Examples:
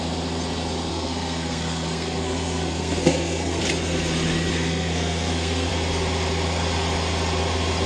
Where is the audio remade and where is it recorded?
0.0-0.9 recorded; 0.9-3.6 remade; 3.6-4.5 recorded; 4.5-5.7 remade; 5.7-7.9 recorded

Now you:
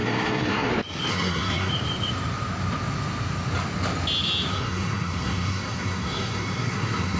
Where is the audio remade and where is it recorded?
0.0-0.7 remade; 0.7-1.1 recorded; 1.1-1.7 remade; 1.7-4.5 recorded; 4.5-7.2 remade

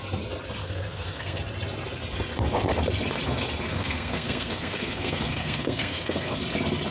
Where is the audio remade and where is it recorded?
0.0-0.6 recorded; 0.6-1.4 remade; 1.4-3.7 recorded; 3.7-6.4 remade; 6.4-6.9 recorded

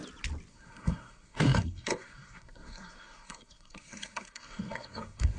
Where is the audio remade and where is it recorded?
0.0-0.5 recorded; 0.5-5.4 remade

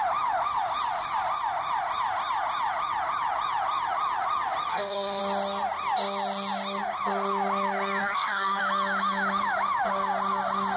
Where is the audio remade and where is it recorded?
0.0-4.7 recorded; 4.7-5.2 remade; 5.2-8.0 recorded; 8.0-8.6 remade; 8.6-10.8 recorded

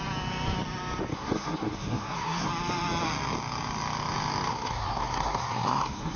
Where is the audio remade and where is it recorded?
0.0-1.1 recorded; 1.1-2.5 remade; 2.5-4.5 recorded; 4.5-6.2 remade